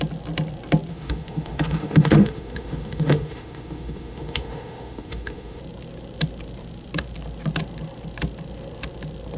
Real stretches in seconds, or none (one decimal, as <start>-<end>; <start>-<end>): 0.0-0.9; 5.6-9.4